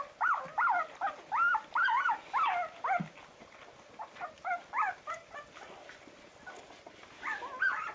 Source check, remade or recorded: recorded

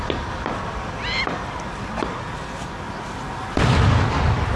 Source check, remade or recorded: recorded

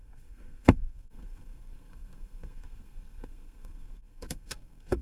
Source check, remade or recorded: remade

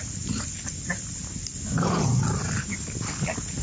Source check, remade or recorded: recorded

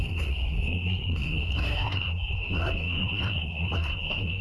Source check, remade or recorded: remade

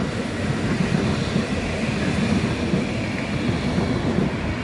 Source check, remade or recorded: recorded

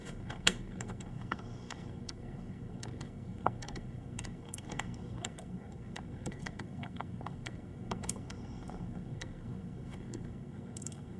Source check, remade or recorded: remade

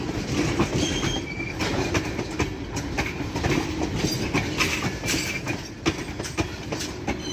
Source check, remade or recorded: recorded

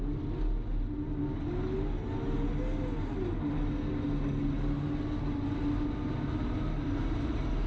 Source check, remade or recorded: recorded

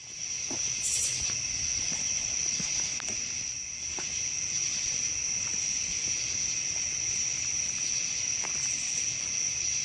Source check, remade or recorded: recorded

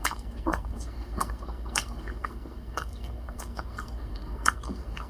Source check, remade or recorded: remade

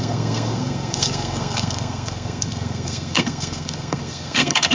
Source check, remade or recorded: remade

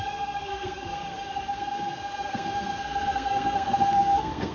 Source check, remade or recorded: remade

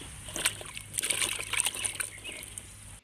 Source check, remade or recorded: recorded